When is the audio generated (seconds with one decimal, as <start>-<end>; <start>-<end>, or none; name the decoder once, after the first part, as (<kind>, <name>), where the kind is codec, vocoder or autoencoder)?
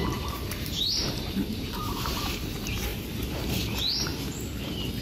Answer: 0.0-2.4 (vocoder, BigVGAN v2)